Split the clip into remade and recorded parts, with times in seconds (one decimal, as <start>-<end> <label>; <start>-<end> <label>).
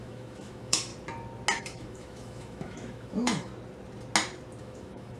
0.0-0.9 remade; 0.9-1.6 recorded; 1.6-3.5 remade; 3.5-4.6 recorded; 4.6-5.2 remade